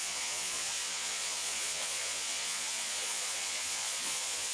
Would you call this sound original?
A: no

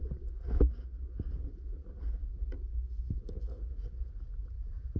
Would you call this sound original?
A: yes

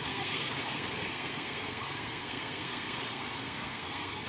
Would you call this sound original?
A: no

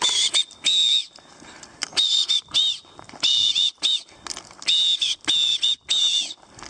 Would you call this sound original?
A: yes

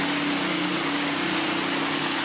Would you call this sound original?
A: yes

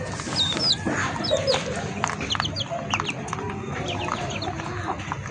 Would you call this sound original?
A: yes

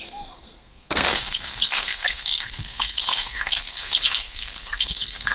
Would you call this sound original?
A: no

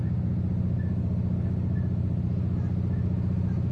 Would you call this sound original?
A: yes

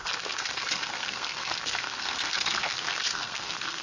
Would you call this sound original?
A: no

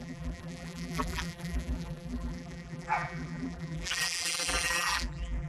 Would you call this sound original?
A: no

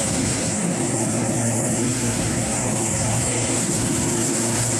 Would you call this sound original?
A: no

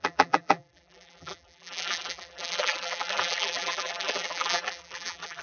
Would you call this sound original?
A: no